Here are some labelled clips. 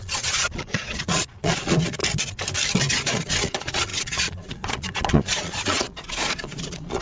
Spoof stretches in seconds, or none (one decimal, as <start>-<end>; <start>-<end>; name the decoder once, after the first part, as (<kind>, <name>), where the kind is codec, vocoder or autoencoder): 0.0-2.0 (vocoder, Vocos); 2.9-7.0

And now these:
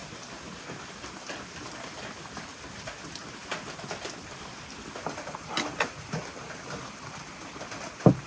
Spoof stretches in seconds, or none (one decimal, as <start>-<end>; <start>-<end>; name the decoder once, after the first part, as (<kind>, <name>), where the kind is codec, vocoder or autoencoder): none

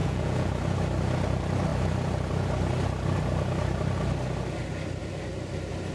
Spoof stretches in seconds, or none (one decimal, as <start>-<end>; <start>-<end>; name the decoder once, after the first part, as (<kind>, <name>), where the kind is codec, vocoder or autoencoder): 0.0-0.5 (vocoder, Vocos)

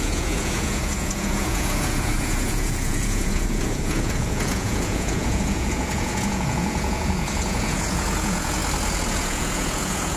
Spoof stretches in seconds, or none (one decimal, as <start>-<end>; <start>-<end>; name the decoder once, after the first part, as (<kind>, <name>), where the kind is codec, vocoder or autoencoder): 0.0-8.6 (vocoder, Vocos); 9.1-10.2